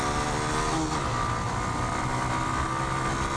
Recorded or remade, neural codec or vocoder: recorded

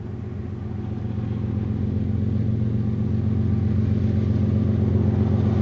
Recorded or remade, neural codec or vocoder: recorded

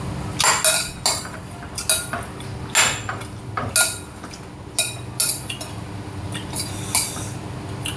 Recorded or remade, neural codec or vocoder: recorded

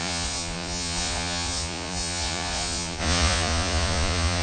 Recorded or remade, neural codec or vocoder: remade, vocoder, Vocos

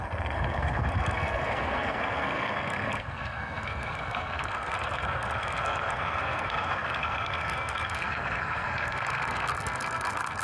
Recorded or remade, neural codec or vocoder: remade, codec, SNAC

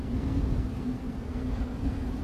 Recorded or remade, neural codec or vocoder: remade, codec, SNAC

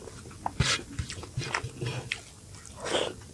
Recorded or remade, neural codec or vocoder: recorded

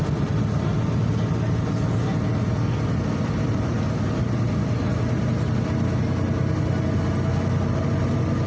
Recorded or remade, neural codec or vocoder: recorded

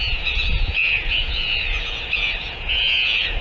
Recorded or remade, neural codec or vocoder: remade, vocoder, Vocos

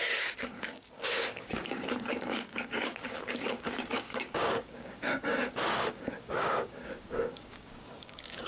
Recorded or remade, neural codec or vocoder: remade, codec, DAC